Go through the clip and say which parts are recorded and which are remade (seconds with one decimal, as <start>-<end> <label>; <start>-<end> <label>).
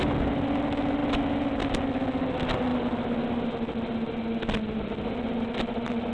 0.0-6.1 recorded